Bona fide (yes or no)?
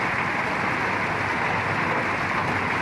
yes